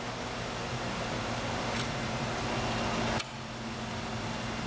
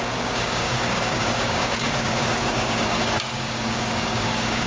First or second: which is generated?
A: second